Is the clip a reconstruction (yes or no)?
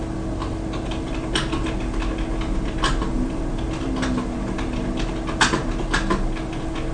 no